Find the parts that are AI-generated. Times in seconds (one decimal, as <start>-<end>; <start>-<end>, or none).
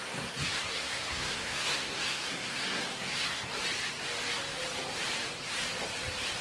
0.0-3.5